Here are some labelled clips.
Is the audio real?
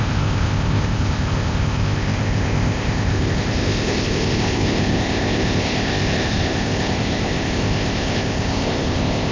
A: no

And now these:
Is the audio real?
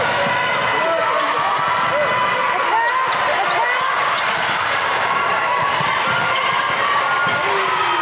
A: yes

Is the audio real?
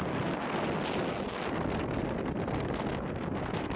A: yes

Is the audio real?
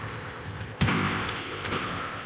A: no